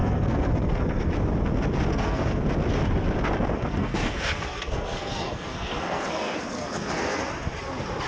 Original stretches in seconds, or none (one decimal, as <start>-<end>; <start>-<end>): 1.1-1.9; 2.4-3.5; 7.2-8.1